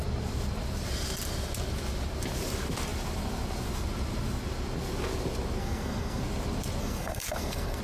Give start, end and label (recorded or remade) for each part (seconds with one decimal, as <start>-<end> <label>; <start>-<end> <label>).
0.0-5.6 recorded; 5.6-6.2 remade; 6.2-6.8 recorded; 6.8-7.8 remade